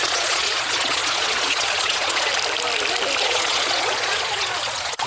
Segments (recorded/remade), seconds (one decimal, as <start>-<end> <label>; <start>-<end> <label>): 0.0-2.3 remade; 2.3-3.2 recorded; 3.2-5.1 remade